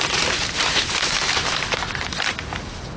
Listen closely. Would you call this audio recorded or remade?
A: remade